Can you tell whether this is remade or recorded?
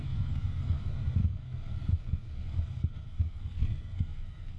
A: remade